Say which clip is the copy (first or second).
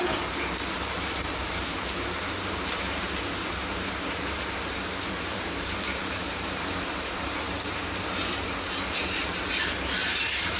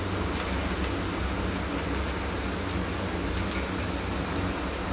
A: first